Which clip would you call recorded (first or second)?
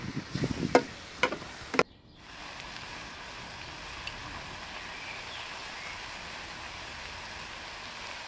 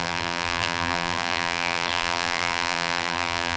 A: first